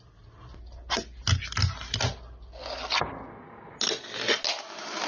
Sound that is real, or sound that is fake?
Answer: real